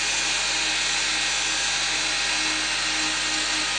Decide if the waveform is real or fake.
real